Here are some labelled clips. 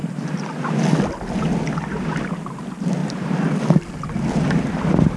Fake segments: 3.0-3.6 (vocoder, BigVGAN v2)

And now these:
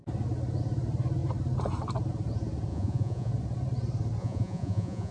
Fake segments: 2.7-3.3 (vocoder, Vocos); 4.2-5.1

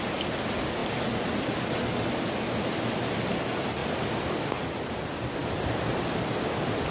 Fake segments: 0.8-1.7 (vocoder, BigVGAN v2); 3.8-4.3; 5.4-6.4

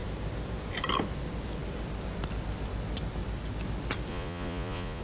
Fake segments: 4.1-5.0 (vocoder, Vocos)

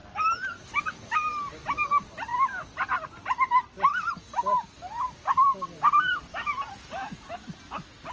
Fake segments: 2.3-6.7 (vocoder, BigVGAN v2)

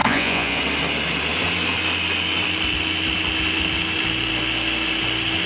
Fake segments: 0.0-0.6 (vocoder, Vocos)

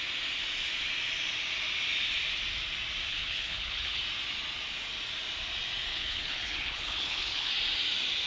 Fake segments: 3.1-4.0 (codec, HILCodec); 5.9-7.5

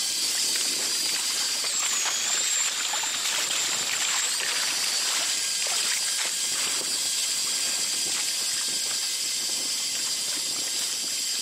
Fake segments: 7.2-7.8 (vocoder, BigVGAN v2)